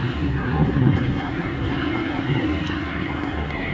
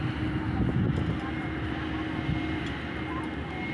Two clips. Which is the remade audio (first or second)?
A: first